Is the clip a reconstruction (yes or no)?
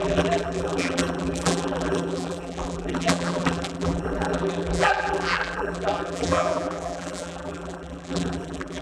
yes